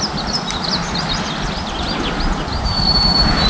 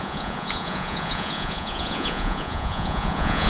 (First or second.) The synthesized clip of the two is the second